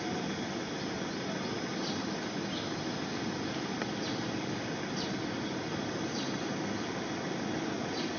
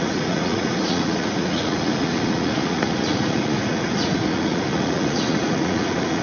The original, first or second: first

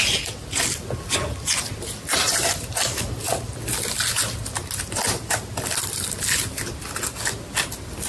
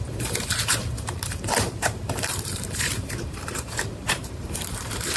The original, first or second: first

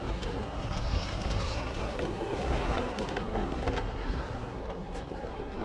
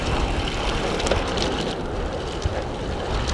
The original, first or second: second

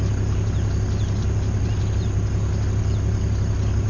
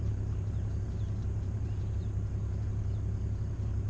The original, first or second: first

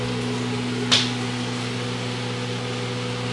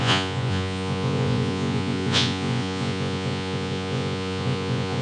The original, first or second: first